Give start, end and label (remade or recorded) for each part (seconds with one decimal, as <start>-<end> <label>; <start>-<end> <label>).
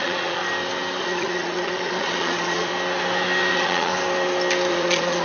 0.0-0.4 remade; 0.4-1.0 recorded; 1.0-2.7 remade; 2.7-3.5 recorded; 3.5-3.9 remade; 3.9-4.7 recorded; 4.7-5.2 remade